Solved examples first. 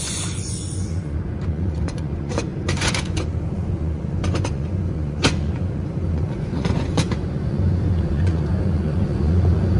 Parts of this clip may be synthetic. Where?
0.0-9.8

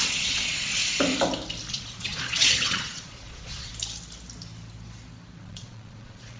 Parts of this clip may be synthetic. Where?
0.0-0.8; 1.7-3.7; 5.4-6.4

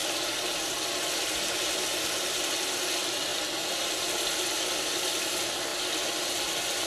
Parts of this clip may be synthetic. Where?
none

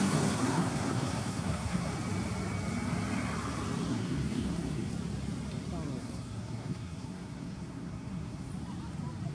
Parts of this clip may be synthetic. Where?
0.0-1.9; 3.9-4.9; 6.0-8.5

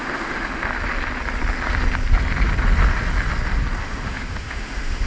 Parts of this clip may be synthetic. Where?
0.0-0.7; 3.8-5.1

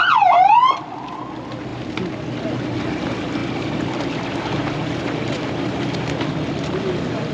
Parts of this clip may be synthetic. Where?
3.4-6.3

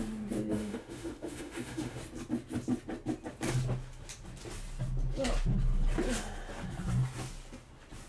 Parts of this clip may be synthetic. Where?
0.5-2.0

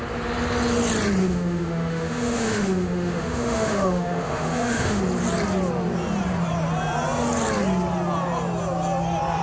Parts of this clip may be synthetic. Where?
1.2-5.0